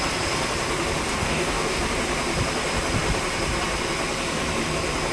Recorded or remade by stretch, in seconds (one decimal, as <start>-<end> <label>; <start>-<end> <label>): 0.0-1.1 recorded; 1.1-1.8 remade; 1.8-5.1 recorded